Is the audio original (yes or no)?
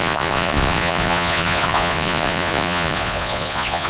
no